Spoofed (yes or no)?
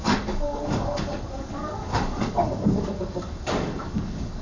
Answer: yes